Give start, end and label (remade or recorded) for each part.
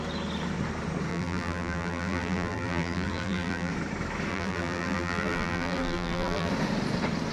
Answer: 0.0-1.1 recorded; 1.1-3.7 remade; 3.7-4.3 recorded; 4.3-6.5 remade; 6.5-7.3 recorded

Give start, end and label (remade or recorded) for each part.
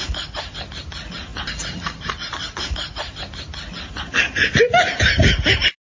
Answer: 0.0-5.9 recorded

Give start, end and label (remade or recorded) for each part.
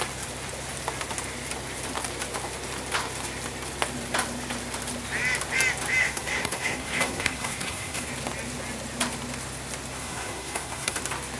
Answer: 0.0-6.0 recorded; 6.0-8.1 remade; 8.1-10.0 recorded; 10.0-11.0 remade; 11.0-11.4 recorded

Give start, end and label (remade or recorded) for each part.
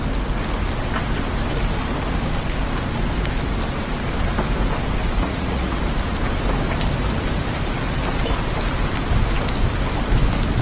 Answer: 0.0-5.0 recorded; 5.0-5.8 remade; 5.8-10.6 recorded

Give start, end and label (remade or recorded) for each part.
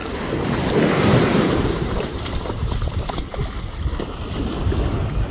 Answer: 0.0-3.2 remade; 3.2-5.3 recorded